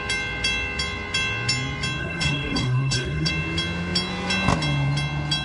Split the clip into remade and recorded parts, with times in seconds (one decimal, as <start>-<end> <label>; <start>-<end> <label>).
0.0-2.0 recorded; 2.0-3.3 remade; 3.3-5.4 recorded